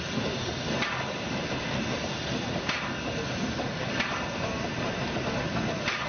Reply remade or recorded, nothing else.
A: recorded